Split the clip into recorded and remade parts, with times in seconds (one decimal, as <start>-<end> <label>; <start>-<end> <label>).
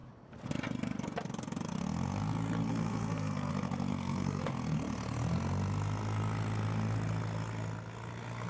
0.0-2.7 recorded; 2.7-3.5 remade; 3.5-3.9 recorded; 3.9-4.4 remade; 4.4-8.5 recorded